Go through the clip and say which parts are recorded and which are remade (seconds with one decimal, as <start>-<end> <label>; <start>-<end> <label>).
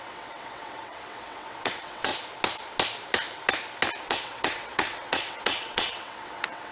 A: 0.0-2.1 remade; 2.1-4.0 recorded; 4.0-6.7 remade